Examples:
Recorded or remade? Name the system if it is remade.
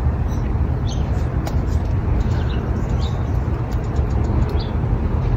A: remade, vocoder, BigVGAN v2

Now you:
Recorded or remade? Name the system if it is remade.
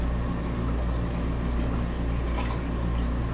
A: recorded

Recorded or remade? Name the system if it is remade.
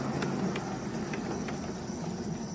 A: recorded